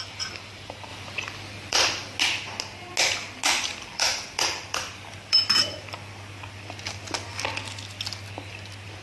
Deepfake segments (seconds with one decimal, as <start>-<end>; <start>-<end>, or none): 0.9-2.2; 3.7-6.1